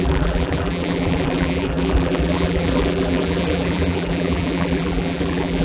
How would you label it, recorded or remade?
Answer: remade